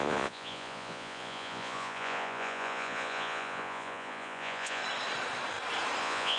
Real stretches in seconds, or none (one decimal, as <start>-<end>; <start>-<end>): 4.8-6.0

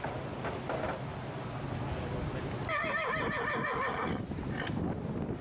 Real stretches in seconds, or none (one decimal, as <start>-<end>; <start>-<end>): 0.0-5.4